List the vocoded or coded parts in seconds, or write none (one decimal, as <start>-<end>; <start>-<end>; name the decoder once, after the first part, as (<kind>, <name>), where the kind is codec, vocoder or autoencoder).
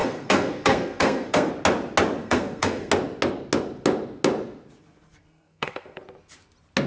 0.0-1.5 (codec, SNAC); 2.2-2.9; 5.2-6.0